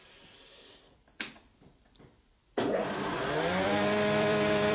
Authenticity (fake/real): fake